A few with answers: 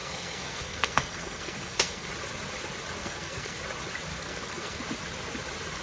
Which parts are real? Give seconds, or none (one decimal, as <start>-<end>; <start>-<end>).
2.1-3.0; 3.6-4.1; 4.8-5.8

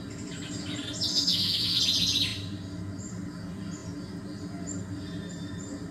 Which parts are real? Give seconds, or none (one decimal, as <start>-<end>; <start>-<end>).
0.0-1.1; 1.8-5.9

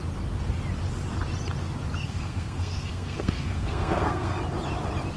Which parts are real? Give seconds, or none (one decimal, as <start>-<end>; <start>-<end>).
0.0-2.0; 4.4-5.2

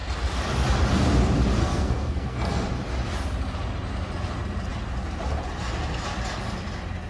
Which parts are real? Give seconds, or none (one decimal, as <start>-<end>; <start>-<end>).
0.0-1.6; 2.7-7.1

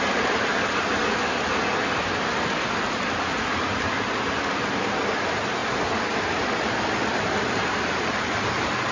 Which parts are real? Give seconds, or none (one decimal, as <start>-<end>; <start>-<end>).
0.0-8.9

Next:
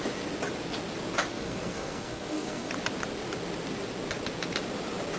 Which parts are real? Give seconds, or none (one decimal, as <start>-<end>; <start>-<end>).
0.0-1.3; 2.7-5.2

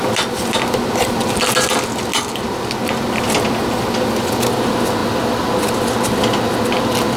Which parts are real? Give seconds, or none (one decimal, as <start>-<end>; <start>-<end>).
0.0-7.2